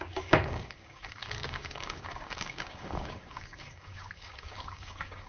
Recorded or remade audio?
remade